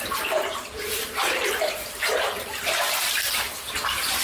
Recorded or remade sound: remade